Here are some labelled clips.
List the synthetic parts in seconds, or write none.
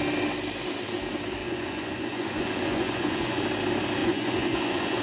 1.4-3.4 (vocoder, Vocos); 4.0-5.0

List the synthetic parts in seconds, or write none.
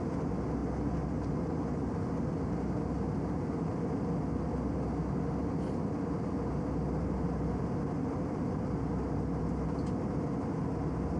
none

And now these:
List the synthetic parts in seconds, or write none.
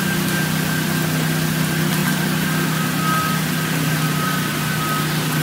none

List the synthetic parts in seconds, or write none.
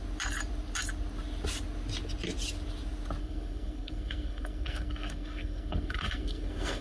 3.2-6.8 (codec, SNAC)